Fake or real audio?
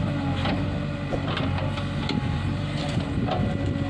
real